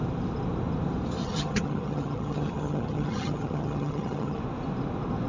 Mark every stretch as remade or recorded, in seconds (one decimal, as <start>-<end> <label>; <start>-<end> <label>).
0.0-1.2 recorded; 1.2-4.4 remade; 4.4-5.3 recorded